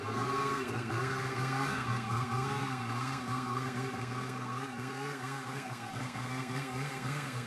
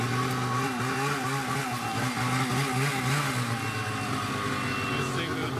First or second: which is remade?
first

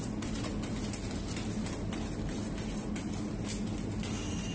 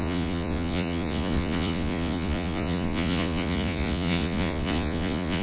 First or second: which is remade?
second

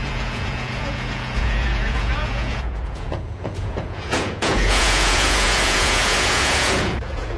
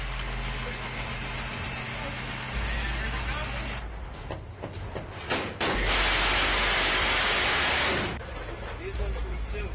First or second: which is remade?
first